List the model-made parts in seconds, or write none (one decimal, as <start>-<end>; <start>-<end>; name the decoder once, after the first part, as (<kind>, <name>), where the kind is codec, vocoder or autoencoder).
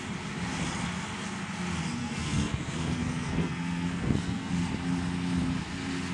2.0-4.5 (codec, SNAC)